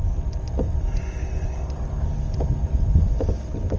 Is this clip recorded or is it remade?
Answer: recorded